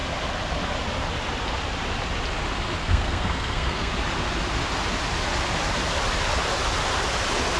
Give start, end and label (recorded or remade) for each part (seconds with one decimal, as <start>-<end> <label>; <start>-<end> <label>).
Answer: 0.0-2.8 recorded; 2.8-3.9 remade; 3.9-7.6 recorded